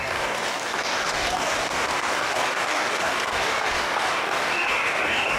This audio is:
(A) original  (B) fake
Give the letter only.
B